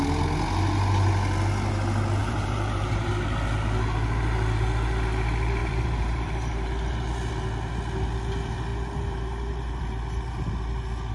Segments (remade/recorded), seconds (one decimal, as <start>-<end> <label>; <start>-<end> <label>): 0.0-2.2 recorded; 2.2-3.1 remade; 3.1-5.6 recorded; 5.6-7.3 remade; 7.3-8.7 recorded; 8.7-9.8 remade; 9.8-11.1 recorded